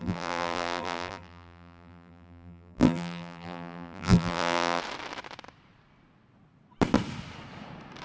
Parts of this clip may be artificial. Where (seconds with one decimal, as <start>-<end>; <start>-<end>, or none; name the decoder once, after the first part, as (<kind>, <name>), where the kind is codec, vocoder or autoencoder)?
0.0-4.8 (vocoder, BigVGAN v2)